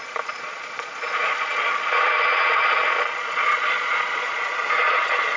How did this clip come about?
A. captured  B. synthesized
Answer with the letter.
B